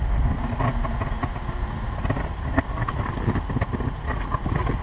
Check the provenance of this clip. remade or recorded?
recorded